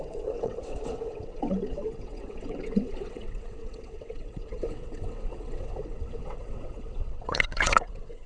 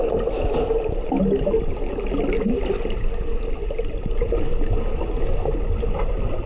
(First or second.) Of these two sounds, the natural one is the second